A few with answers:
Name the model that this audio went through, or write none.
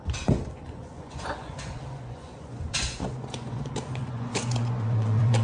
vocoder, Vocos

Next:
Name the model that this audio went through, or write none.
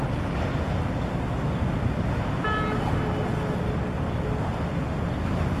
none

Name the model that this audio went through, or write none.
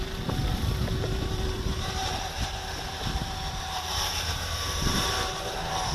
vocoder, BigVGAN v2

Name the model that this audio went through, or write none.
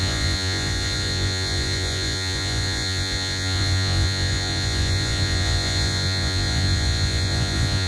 vocoder, Vocos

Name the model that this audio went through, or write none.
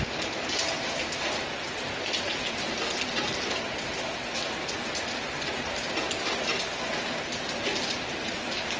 none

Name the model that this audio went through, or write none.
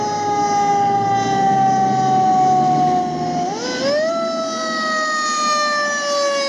none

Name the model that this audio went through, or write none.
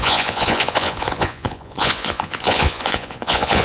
vocoder, Vocos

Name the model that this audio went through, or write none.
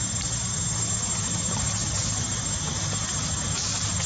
none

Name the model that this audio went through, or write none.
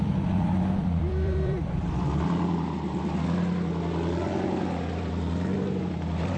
vocoder, BigVGAN v2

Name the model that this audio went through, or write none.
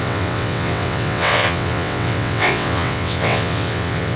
vocoder, WaveNeXt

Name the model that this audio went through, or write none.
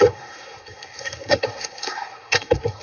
codec, SNAC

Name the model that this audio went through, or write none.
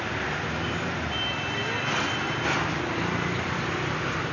none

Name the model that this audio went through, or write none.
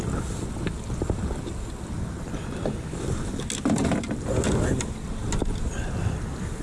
none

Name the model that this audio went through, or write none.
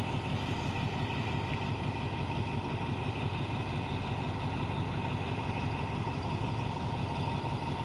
none